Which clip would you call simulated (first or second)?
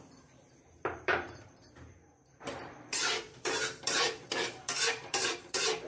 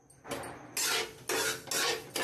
first